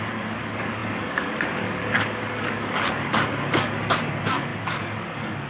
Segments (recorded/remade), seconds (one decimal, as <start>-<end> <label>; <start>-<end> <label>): 0.0-5.5 remade